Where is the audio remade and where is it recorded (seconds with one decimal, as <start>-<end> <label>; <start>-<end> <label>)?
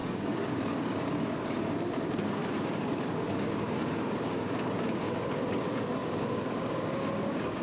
0.0-7.6 remade